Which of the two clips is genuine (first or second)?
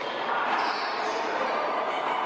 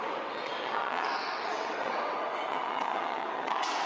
first